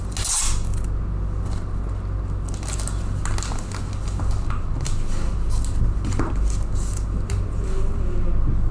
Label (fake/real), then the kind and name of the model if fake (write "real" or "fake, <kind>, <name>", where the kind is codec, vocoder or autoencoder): real